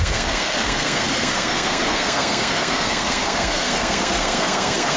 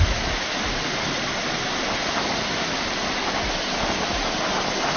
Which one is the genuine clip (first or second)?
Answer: second